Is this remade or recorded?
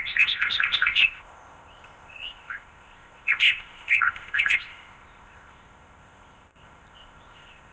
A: remade